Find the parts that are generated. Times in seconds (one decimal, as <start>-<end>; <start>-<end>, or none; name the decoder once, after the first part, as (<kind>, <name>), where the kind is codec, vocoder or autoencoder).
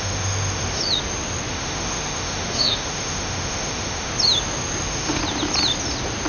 0.0-0.8 (autoencoder, DAC-VAE); 1.5-4.1; 4.8-5.2